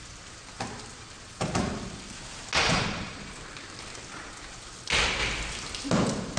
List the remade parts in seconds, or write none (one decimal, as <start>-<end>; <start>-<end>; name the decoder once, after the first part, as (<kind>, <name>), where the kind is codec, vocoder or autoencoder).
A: 2.6-3.3 (vocoder, Vocos)